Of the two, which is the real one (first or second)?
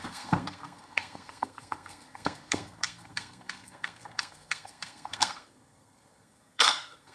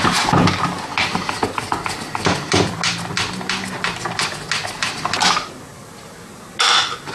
second